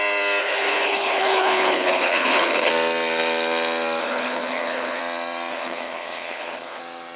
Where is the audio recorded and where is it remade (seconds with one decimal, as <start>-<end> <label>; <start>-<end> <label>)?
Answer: 0.0-0.4 recorded; 0.4-2.7 remade; 2.7-4.0 recorded; 4.0-5.0 remade; 5.0-5.5 recorded; 5.5-6.8 remade; 6.8-7.2 recorded